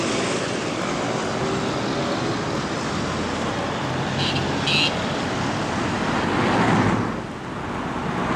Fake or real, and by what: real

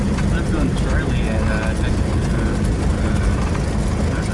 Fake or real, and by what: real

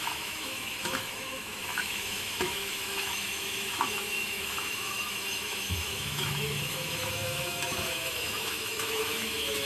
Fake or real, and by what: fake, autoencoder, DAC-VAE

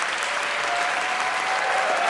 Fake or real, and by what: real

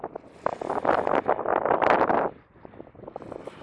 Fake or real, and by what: real